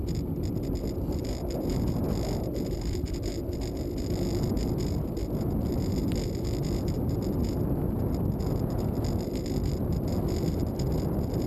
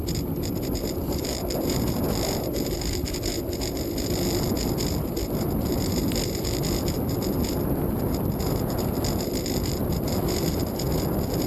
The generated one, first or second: second